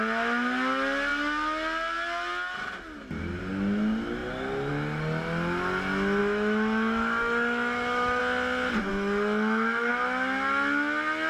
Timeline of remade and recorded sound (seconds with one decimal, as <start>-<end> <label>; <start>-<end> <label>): 0.0-6.2 recorded; 6.2-8.2 remade; 8.2-8.9 recorded; 8.9-9.9 remade; 9.9-11.3 recorded